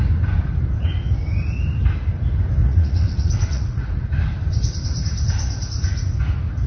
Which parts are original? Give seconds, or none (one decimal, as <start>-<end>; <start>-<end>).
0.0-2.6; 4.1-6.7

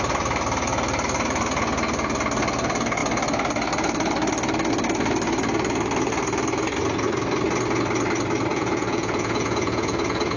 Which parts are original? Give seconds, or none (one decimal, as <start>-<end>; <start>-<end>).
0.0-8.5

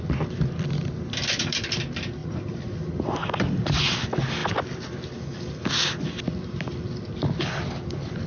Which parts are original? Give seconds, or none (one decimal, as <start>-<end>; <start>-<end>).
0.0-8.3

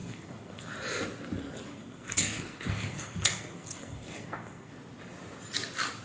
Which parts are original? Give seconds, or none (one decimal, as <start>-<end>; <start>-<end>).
0.7-1.7; 4.8-6.0